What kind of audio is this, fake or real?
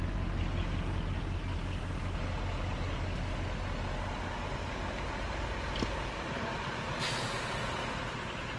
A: real